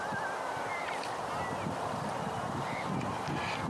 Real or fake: real